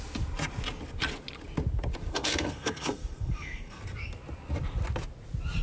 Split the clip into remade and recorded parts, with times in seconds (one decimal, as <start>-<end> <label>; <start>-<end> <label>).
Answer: 0.0-2.1 recorded; 2.1-3.8 remade; 3.8-5.6 recorded